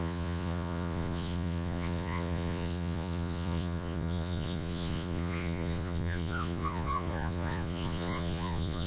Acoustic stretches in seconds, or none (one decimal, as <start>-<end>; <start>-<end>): none